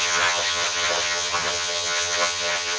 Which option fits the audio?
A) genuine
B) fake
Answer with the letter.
B